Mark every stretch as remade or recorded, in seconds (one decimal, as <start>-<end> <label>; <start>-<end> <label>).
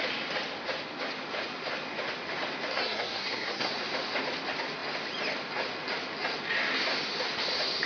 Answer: 0.0-2.7 recorded; 2.7-3.7 remade; 3.7-7.9 recorded